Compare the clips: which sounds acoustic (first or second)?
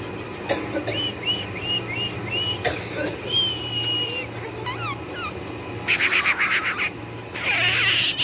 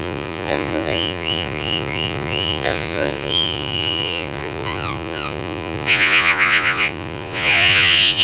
first